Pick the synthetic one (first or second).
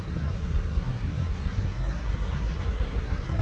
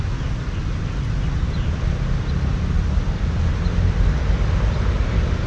first